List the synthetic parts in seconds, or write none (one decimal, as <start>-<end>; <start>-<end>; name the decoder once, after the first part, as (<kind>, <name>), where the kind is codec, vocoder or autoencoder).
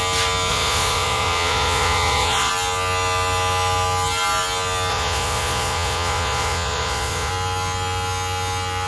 0.5-2.5 (vocoder, Vocos); 4.9-7.3